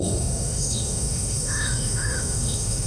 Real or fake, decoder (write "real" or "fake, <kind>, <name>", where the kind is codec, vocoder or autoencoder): fake, autoencoder, DAC-VAE